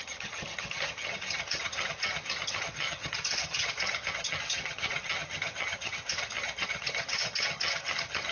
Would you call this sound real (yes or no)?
no